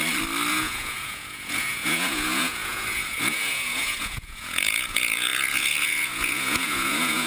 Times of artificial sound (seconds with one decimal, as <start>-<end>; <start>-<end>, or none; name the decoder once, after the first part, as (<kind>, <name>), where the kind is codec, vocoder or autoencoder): 0.5-7.3 (vocoder, Vocos)